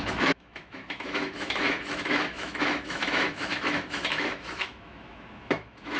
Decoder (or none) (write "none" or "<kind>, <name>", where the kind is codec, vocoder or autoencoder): autoencoder, DAC-VAE